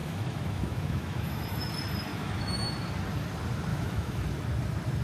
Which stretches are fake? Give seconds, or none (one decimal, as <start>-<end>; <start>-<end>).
0.0-1.7; 2.1-2.7; 3.7-4.2

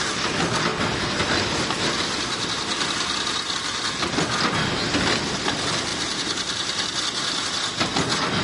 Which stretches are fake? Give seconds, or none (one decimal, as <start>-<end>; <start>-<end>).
none